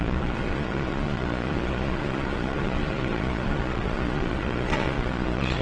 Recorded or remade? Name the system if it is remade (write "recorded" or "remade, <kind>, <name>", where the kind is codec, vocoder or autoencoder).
remade, vocoder, Vocos